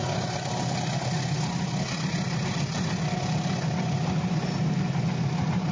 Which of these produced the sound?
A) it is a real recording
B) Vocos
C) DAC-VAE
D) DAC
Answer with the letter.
A